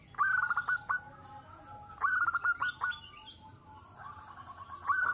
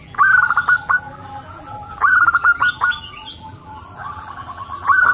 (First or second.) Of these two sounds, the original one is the first